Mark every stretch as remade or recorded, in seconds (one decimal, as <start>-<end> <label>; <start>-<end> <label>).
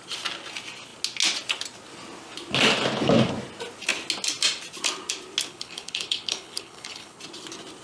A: 0.0-5.5 recorded; 5.5-7.2 remade; 7.2-7.8 recorded